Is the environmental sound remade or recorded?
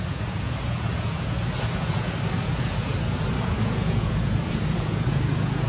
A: remade